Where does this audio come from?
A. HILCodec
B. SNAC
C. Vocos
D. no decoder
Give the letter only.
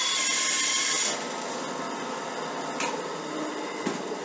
D